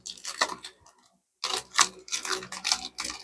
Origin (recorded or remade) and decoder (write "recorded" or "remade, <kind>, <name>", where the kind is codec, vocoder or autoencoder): recorded